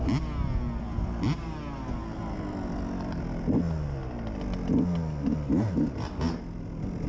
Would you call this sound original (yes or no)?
yes